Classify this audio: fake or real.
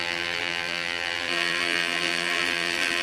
fake